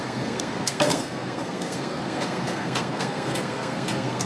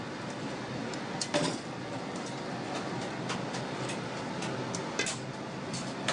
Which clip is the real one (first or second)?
second